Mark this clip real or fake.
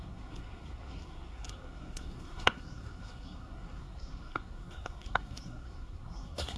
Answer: fake